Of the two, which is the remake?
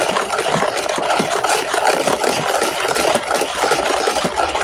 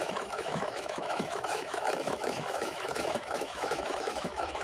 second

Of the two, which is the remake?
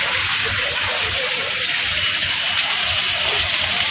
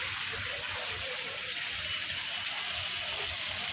first